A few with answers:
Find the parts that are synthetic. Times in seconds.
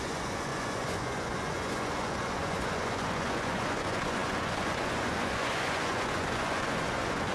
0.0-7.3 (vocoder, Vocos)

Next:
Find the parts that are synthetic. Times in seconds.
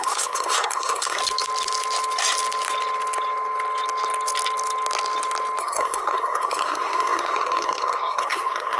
0.0-1.2 (codec, SNAC); 5.6-8.8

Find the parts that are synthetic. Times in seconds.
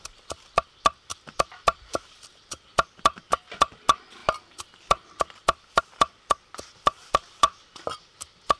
none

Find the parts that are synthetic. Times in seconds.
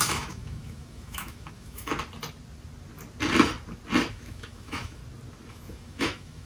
0.0-1.9 (autoencoder, DAC-VAE); 4.1-5.0; 5.5-6.5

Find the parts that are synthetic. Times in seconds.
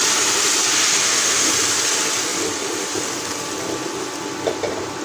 1.0-1.5 (autoencoder, DAC-VAE)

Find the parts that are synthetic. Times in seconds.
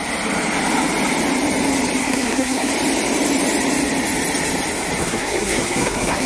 2.0-2.7 (codec, SNAC); 5.0-6.3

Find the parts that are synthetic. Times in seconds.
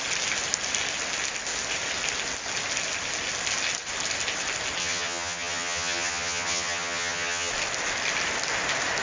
4.8-7.5 (vocoder, HiFi-GAN)